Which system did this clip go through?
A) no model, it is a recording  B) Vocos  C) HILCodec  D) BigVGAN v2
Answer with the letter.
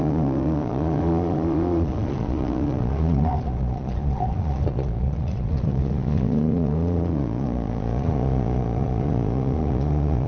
B